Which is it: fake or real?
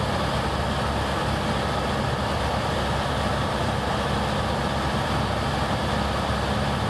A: real